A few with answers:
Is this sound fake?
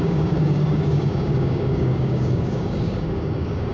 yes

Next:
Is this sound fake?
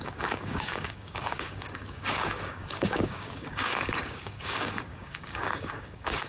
yes